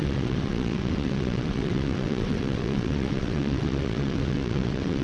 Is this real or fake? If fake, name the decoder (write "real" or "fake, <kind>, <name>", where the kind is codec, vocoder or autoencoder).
fake, vocoder, WaveNeXt